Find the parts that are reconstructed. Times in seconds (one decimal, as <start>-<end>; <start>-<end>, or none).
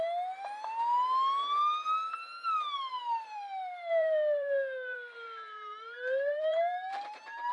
2.9-7.5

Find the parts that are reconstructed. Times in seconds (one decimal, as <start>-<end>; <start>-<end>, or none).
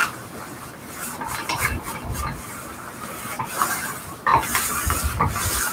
0.0-3.4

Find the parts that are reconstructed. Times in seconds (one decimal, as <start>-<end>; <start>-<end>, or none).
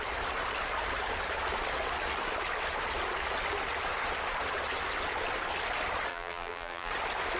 6.1-6.9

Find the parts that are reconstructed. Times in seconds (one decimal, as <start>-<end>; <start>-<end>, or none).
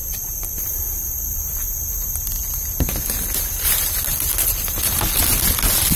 none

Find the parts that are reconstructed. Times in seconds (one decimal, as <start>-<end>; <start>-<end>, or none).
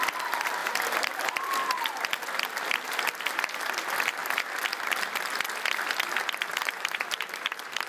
0.6-1.2; 6.5-7.9